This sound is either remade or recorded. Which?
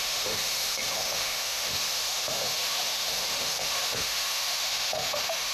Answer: remade